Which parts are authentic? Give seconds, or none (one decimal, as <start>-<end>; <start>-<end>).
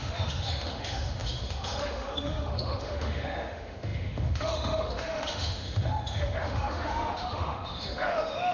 none